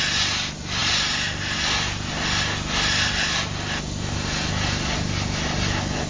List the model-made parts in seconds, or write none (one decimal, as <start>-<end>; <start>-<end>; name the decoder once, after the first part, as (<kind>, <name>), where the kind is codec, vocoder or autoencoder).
none